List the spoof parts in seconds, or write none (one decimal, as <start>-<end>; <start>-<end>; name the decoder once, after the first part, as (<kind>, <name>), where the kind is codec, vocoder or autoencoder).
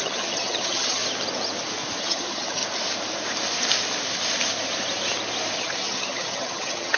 0.0-1.0 (vocoder, HiFi-GAN); 2.0-2.6; 5.6-7.0